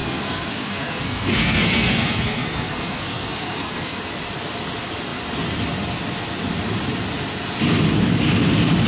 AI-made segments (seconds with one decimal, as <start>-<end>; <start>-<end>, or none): 0.0-4.0